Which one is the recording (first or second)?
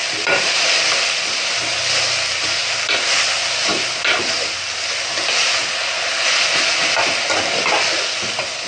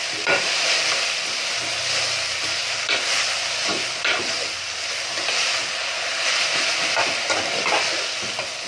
first